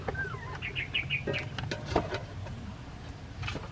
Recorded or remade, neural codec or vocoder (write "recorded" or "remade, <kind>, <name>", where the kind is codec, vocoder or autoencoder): recorded